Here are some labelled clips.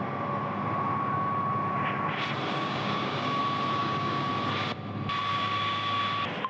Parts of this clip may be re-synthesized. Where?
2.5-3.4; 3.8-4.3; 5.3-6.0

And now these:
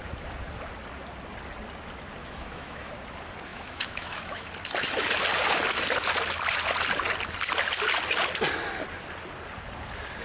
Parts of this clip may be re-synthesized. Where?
2.2-2.9; 3.5-4.5

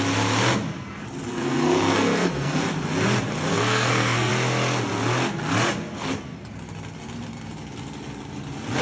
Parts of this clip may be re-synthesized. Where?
1.3-2.6; 3.5-4.3

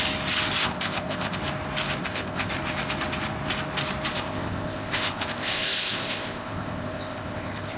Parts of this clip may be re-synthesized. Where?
0.6-1.4; 2.0-2.5; 4.1-7.8

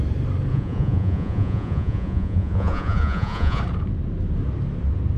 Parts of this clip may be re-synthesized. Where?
0.5-3.6